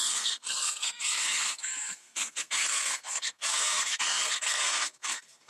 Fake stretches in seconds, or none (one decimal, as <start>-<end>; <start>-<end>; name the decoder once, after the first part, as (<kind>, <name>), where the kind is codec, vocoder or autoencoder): 0.0-5.5 (codec, SNAC)